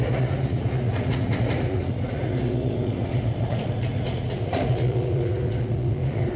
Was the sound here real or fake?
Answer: fake